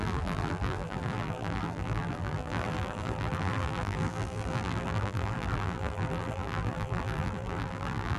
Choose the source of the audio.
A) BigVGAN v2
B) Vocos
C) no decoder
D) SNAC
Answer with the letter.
A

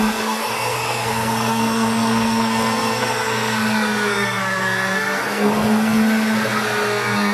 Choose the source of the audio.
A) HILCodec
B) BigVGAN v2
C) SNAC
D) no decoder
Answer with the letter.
C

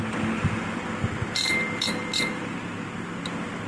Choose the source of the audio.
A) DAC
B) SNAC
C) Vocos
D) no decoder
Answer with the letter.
D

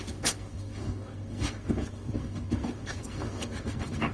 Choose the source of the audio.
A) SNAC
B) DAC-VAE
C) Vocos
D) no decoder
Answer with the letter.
A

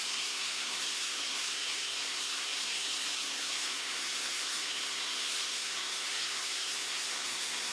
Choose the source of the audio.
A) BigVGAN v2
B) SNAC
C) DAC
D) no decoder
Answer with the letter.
B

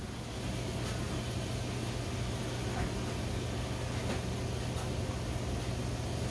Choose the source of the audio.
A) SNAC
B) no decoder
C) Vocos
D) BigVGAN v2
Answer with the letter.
B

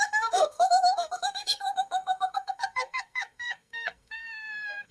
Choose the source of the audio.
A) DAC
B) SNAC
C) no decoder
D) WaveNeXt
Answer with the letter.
B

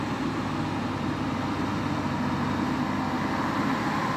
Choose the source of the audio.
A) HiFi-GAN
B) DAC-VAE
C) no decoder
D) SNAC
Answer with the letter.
C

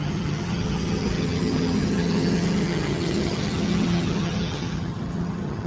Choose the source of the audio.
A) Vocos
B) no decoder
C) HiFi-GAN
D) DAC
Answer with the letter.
C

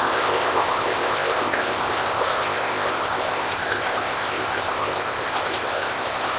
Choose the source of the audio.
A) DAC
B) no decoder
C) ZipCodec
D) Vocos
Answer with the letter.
C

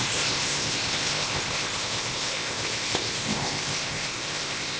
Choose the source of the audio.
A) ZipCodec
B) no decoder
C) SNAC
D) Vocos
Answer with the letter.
A